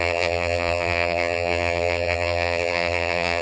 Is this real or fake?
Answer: fake